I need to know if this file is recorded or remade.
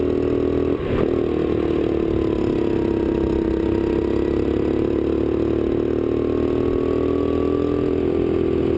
recorded